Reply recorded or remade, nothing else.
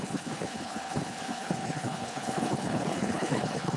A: remade